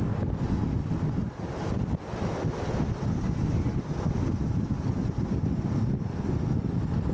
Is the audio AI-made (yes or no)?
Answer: no